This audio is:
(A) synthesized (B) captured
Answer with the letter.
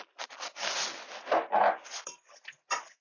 B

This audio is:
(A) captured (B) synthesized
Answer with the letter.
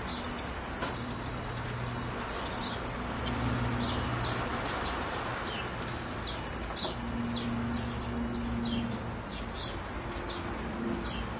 A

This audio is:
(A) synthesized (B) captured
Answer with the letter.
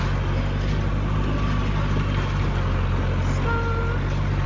B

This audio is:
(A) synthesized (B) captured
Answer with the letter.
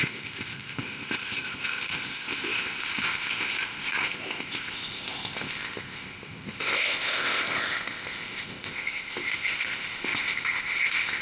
A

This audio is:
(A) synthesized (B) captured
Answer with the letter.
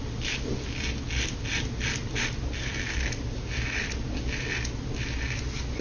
B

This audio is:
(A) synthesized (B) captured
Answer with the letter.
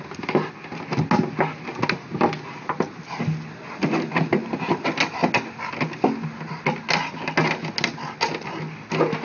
B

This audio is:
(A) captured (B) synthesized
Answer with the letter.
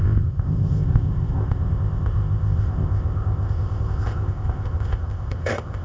B